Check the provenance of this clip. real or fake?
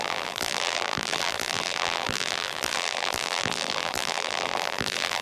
fake